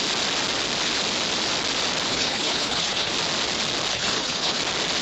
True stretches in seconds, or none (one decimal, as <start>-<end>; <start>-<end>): 0.0-2.1; 3.1-3.9; 4.6-5.0